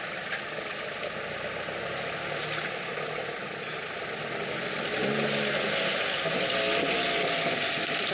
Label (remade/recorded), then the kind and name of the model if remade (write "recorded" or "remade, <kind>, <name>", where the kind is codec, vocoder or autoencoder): recorded